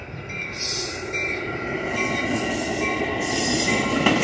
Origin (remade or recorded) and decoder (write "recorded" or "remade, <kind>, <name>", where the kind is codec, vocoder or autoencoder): recorded